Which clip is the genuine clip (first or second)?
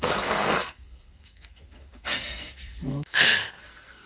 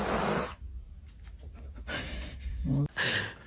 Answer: second